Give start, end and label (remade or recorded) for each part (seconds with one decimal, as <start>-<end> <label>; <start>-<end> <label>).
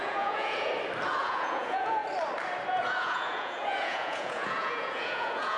0.0-0.7 remade; 0.7-1.2 recorded; 1.2-2.0 remade; 2.0-2.7 recorded; 2.7-5.6 remade